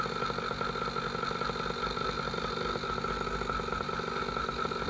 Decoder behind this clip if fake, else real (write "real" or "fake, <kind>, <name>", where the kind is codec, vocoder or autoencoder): real